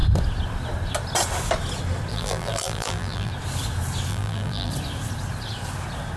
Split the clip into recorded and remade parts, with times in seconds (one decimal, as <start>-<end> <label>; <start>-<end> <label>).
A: 0.0-2.1 recorded; 2.1-3.3 remade; 3.3-4.1 recorded; 4.1-4.7 remade; 4.7-6.2 recorded